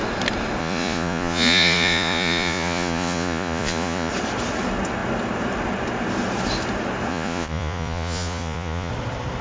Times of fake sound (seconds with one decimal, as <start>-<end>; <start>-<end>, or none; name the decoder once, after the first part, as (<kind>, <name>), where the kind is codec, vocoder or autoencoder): 0.6-4.1 (vocoder, Vocos); 7.1-8.9